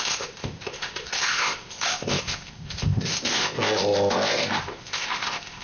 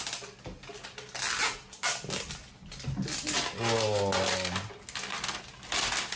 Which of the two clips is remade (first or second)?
first